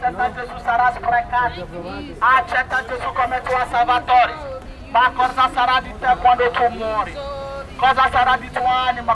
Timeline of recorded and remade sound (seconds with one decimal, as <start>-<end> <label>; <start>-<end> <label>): 0.0-9.1 recorded